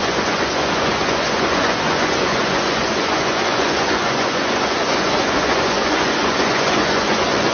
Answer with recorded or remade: remade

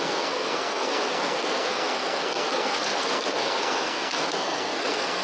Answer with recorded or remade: remade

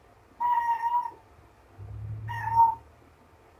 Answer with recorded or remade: recorded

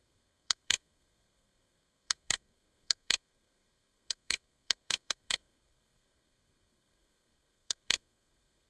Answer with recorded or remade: remade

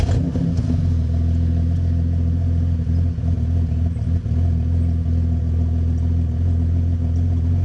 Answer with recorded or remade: recorded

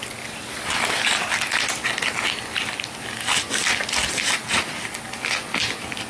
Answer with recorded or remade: recorded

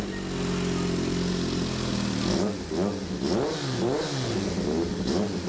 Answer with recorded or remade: recorded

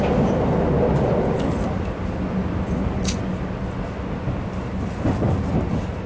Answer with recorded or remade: recorded